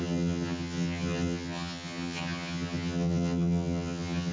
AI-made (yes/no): yes